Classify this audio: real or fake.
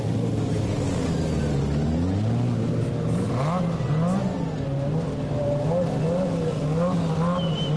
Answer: real